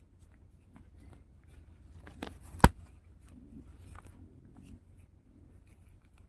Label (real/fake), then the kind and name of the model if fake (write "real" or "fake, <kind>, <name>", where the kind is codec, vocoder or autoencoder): real